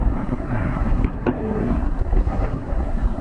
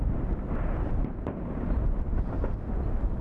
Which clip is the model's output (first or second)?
first